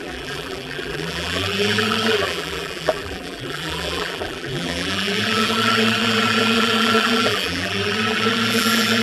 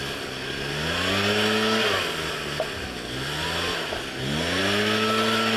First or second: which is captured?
second